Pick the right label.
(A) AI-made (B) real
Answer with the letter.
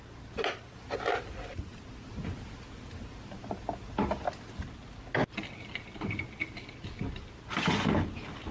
B